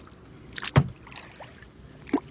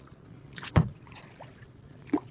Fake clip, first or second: second